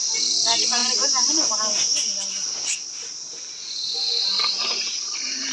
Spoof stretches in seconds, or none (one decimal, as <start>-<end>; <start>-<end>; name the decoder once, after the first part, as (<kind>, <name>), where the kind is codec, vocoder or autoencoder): none